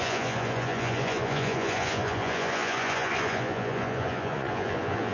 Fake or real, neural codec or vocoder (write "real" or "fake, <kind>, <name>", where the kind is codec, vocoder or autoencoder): fake, vocoder, Vocos